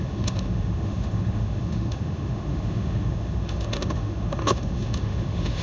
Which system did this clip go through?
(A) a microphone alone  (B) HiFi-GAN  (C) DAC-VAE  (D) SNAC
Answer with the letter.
C